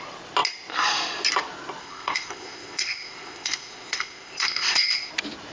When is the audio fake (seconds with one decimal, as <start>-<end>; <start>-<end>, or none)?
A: 1.8-5.1